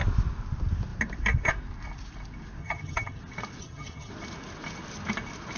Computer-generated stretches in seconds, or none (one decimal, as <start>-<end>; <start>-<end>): 2.6-3.2; 3.6-4.1